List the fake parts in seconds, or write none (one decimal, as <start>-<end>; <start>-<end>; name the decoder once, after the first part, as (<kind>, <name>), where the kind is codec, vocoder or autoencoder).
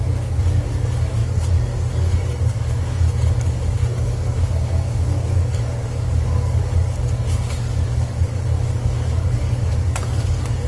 0.0-1.2 (codec, DAC); 1.9-10.7